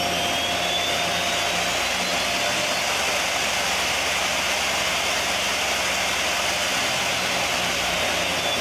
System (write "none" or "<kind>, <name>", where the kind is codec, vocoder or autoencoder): none